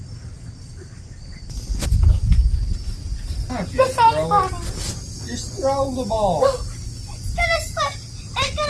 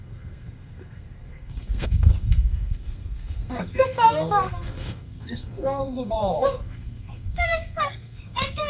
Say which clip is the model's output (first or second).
second